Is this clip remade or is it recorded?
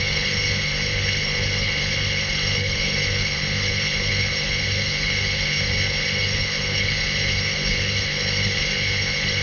remade